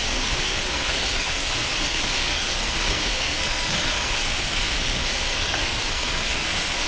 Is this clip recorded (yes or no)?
no